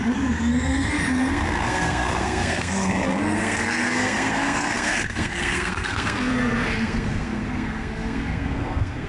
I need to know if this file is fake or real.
fake